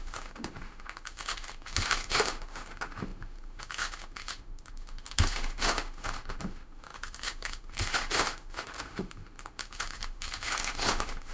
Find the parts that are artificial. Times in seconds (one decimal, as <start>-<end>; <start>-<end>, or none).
0.0-11.3